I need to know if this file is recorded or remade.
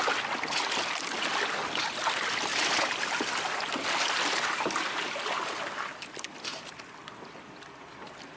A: recorded